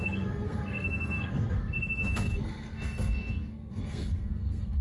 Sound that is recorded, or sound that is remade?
remade